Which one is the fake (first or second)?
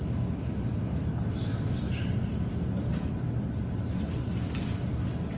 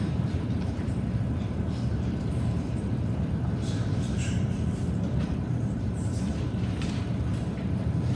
second